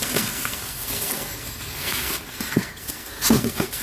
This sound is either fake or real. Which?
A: fake